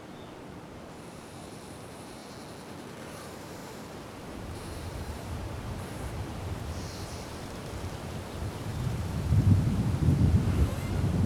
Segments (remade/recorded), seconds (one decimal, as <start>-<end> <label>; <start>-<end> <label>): 0.0-2.2 remade; 2.2-3.0 recorded; 3.0-3.6 remade; 3.6-4.2 recorded; 4.2-11.3 remade